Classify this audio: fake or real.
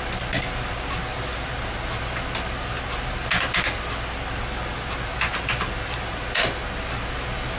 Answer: real